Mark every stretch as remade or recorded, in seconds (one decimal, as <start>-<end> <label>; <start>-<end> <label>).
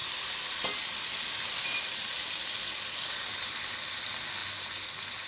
0.0-5.3 recorded